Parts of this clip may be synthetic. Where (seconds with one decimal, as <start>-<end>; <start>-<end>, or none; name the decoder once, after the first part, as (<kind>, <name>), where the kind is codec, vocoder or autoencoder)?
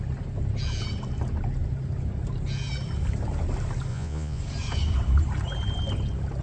3.9-4.4 (vocoder, Vocos)